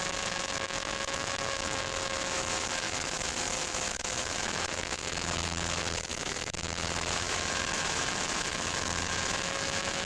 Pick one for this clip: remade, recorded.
remade